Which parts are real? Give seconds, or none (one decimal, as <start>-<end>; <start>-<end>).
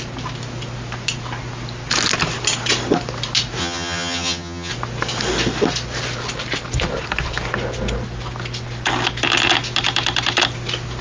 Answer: 0.0-3.6; 4.7-11.0